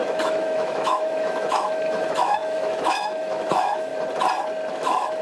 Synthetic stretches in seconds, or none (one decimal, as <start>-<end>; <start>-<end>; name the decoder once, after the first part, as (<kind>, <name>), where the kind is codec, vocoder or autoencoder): 0.0-3.9 (autoencoder, DAC-VAE); 4.7-5.2